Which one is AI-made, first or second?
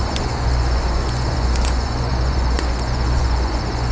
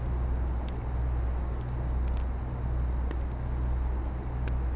first